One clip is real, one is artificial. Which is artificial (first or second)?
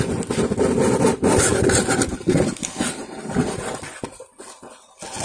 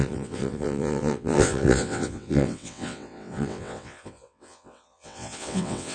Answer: second